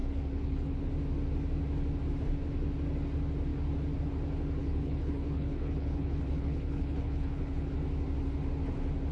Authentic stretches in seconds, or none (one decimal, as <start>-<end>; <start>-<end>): 0.9-4.6; 7.7-9.1